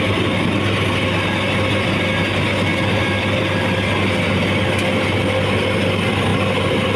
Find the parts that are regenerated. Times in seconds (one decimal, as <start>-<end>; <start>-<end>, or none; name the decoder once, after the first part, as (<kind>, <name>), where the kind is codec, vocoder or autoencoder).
none